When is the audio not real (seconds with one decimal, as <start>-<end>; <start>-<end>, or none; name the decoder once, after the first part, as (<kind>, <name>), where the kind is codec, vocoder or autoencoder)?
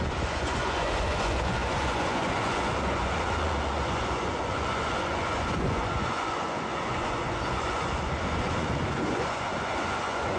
0.0-10.4 (vocoder, Vocos)